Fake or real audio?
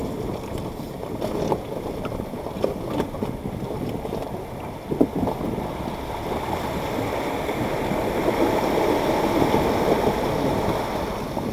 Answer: real